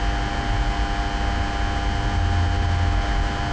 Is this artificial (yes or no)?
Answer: no